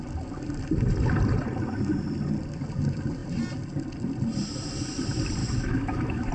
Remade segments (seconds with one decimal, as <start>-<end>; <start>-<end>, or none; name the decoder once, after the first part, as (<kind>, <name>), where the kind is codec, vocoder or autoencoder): 5.4-6.3 (autoencoder, DAC-VAE)